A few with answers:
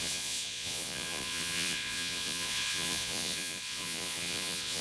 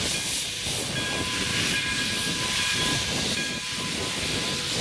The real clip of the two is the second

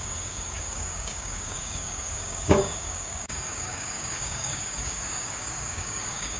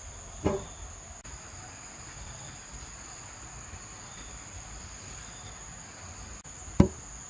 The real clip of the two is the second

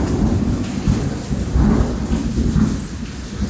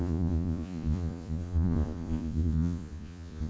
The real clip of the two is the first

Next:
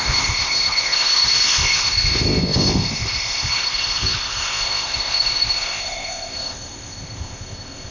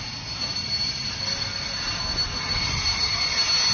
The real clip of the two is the second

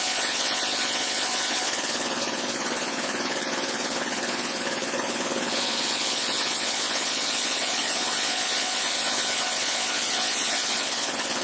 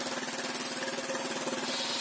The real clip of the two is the second